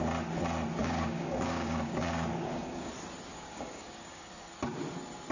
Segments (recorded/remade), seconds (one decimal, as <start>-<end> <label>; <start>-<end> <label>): 0.0-0.8 recorded; 0.8-2.9 remade; 2.9-3.3 recorded; 3.3-4.5 remade; 4.5-5.3 recorded